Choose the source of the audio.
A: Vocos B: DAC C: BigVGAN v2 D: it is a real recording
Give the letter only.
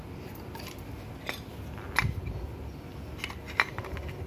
D